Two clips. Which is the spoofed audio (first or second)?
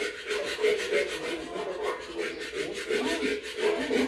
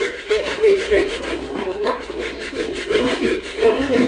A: second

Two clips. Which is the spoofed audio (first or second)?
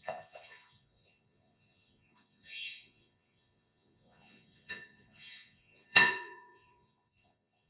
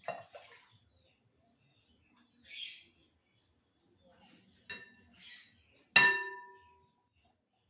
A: first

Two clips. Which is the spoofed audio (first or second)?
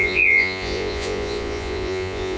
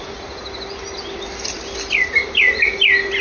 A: first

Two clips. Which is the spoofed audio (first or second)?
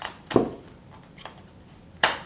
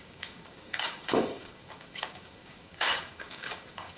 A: second